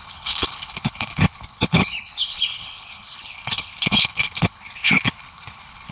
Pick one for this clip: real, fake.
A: fake